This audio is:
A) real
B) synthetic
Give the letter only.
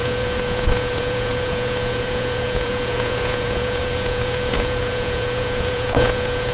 B